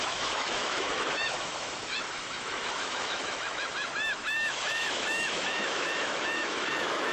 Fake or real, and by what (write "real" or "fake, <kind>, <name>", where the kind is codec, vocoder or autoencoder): fake, autoencoder, DAC-VAE